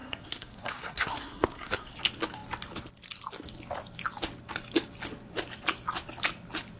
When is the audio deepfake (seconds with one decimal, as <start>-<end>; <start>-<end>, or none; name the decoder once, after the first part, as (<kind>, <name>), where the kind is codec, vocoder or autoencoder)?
0.0-2.0 (codec, SNAC)